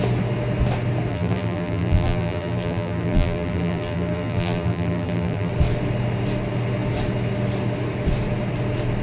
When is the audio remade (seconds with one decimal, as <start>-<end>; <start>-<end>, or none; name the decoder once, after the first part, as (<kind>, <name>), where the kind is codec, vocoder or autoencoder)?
1.1-5.5 (vocoder, BigVGAN v2)